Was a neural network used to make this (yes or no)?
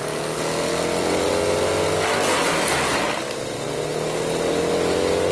no